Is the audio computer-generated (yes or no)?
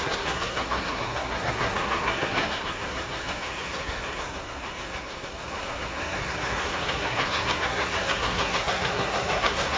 yes